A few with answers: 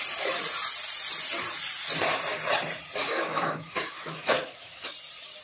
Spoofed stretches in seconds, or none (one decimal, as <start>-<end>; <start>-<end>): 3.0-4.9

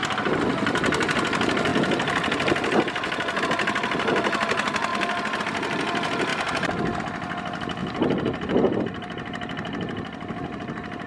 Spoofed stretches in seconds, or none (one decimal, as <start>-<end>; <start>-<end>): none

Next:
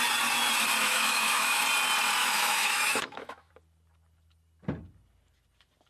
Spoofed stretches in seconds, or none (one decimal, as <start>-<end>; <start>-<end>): 0.8-1.6; 2.2-3.5

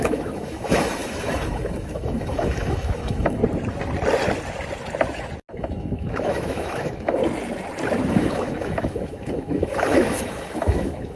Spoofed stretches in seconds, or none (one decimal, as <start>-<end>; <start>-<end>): 0.0-3.4; 5.5-7.2; 8.1-11.2

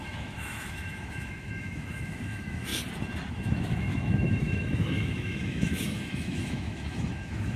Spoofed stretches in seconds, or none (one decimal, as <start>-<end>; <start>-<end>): 0.0-2.7; 3.3-7.6